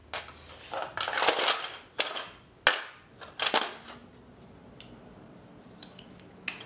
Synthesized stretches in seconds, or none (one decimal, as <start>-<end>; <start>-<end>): none